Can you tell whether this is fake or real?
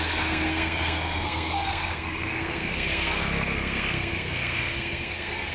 fake